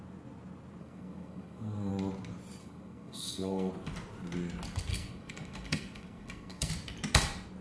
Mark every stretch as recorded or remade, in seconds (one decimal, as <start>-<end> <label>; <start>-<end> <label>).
0.0-0.8 recorded; 0.8-1.9 remade; 1.9-2.6 recorded; 2.6-3.7 remade; 3.7-4.9 recorded; 4.9-6.7 remade; 6.7-7.6 recorded